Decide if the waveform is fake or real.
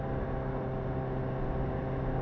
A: real